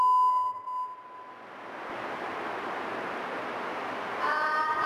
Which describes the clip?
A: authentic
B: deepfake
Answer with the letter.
A